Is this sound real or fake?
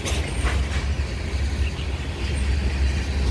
real